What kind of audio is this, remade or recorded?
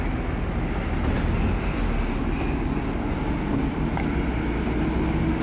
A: recorded